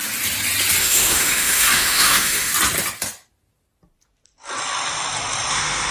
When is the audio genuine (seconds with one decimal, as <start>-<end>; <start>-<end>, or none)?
0.0-0.8; 2.5-5.5